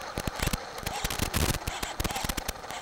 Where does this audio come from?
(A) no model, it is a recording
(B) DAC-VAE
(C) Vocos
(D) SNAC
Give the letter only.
A